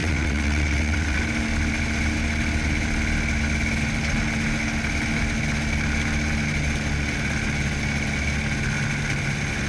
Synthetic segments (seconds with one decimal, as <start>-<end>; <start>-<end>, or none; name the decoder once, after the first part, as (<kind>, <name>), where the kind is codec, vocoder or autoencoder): 0.0-1.2 (vocoder, WaveNeXt)